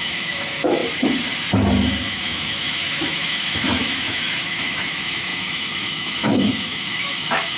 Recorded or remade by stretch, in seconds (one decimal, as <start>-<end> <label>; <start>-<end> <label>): 0.0-0.8 remade; 0.8-2.1 recorded; 2.1-7.6 remade